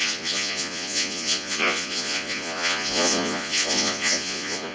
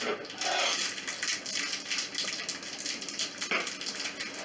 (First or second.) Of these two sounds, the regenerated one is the first